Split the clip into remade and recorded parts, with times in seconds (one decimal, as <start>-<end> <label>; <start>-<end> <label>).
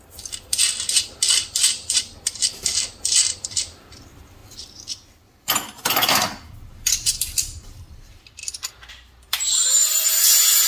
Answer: 0.0-0.5 remade; 0.5-1.3 recorded; 1.3-4.4 remade; 4.4-5.3 recorded; 5.3-8.4 remade; 8.4-8.9 recorded; 8.9-10.7 remade